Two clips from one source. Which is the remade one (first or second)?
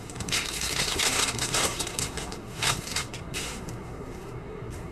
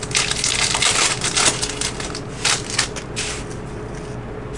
first